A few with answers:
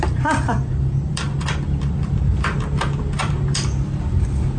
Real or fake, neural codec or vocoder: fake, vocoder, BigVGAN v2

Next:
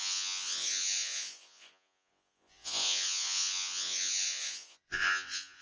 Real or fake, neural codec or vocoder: fake, vocoder, Vocos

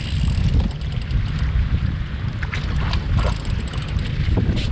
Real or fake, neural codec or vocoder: real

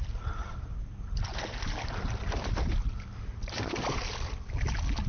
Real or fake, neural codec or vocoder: real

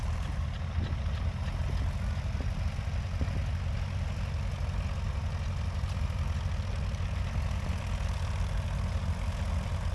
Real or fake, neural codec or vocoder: real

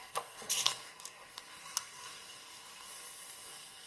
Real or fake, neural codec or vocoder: fake, codec, SNAC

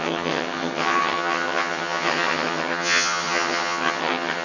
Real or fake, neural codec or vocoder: fake, vocoder, HiFi-GAN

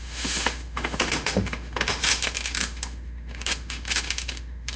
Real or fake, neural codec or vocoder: fake, autoencoder, DAC-VAE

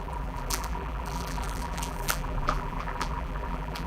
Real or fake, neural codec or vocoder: fake, vocoder, BigVGAN v2